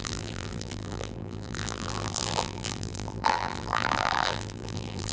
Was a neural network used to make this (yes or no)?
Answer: yes